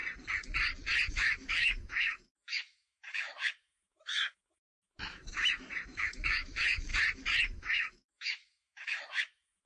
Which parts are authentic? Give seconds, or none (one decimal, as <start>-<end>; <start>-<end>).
0.0-1.1; 6.9-7.4